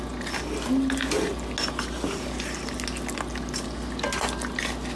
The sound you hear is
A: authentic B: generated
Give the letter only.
A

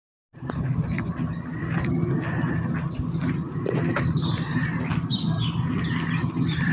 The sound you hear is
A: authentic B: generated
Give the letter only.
A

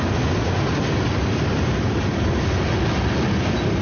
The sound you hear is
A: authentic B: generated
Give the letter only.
A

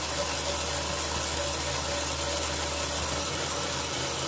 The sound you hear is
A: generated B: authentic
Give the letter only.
B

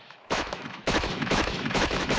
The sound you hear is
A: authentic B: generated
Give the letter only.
B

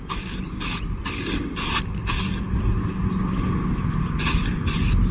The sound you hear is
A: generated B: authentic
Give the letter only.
B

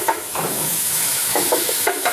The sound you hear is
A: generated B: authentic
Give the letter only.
A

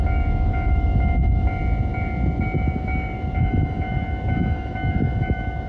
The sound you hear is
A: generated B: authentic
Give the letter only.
A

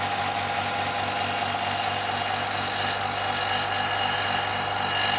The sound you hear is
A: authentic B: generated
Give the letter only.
A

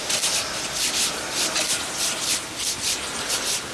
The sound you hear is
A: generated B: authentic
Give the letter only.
B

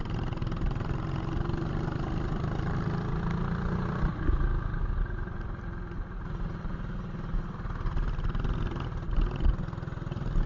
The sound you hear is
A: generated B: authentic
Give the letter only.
B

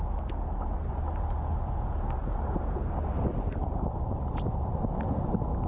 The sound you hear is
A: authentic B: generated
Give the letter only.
A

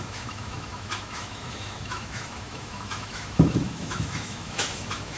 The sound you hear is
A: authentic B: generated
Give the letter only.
B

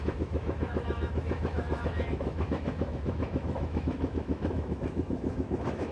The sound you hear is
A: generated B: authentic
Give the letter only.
A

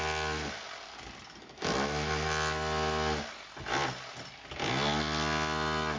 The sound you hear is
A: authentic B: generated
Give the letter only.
A